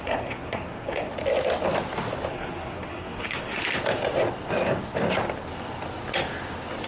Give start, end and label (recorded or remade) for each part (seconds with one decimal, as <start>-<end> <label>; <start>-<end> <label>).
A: 0.0-1.1 remade; 1.1-2.3 recorded; 2.3-3.6 remade; 3.6-6.9 recorded